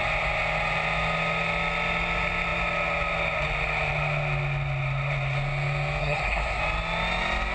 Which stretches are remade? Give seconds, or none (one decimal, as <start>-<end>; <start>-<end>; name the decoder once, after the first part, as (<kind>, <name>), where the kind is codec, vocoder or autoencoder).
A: 6.0-6.6 (codec, SNAC)